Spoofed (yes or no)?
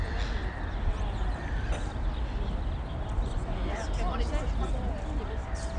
no